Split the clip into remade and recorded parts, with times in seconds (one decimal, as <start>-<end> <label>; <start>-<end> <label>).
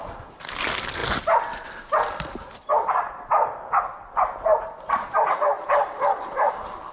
0.0-6.9 recorded